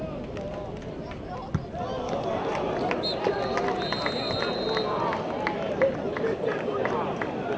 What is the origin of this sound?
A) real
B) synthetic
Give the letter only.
A